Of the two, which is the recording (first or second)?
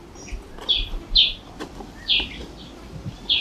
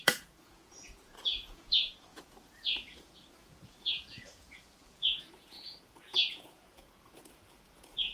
first